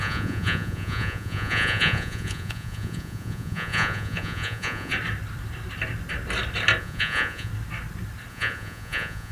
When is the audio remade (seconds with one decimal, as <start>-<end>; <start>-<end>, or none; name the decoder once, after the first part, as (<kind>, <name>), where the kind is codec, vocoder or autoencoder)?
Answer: 0.0-4.9 (vocoder, Vocos); 6.8-7.5; 8.3-9.3